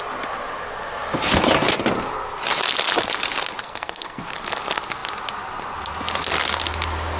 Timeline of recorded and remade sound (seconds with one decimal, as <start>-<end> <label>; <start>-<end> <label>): 0.0-3.6 recorded; 3.6-4.2 remade; 4.2-7.2 recorded